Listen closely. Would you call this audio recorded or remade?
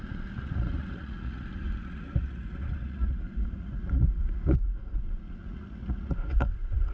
remade